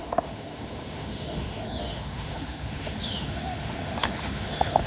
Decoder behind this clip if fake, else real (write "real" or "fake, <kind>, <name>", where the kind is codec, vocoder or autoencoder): fake, autoencoder, DAC-VAE